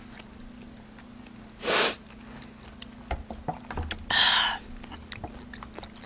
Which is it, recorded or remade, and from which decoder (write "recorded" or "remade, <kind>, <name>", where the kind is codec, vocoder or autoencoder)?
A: recorded